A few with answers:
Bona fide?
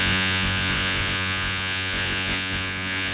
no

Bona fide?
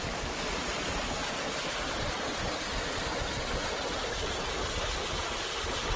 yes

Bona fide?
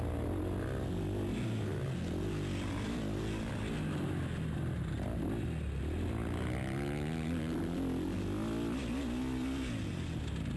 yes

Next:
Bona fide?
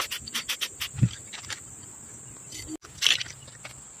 yes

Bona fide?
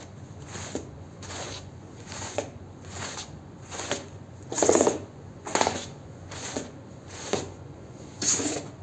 no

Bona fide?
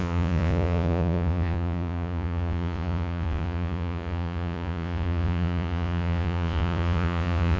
no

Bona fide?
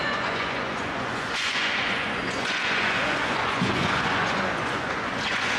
no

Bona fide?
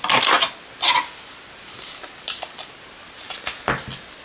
yes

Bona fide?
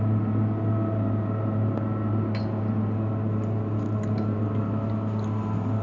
yes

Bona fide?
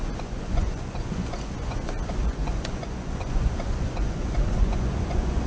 no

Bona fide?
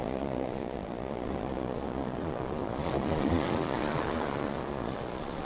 no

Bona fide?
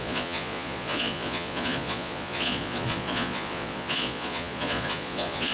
no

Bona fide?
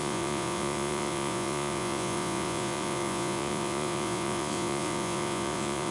no